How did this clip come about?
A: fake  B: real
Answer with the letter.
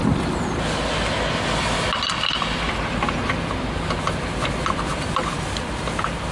B